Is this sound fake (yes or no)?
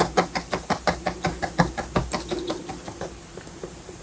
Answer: no